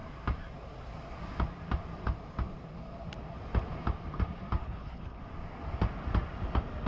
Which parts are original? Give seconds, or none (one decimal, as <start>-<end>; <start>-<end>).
0.0-4.6; 5.2-6.9